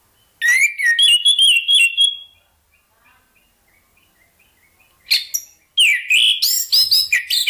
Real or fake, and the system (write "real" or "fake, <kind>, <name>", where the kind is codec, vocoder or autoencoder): real